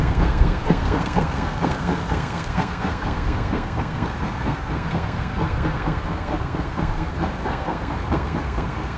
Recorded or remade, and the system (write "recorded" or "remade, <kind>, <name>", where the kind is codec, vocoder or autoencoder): remade, codec, SNAC